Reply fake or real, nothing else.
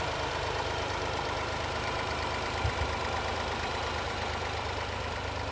fake